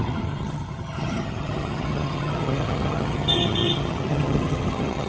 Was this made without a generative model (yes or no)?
no